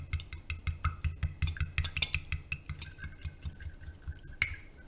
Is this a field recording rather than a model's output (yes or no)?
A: yes